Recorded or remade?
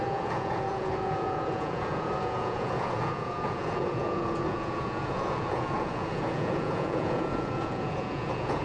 remade